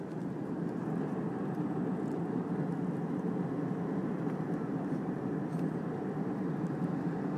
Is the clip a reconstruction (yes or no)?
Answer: no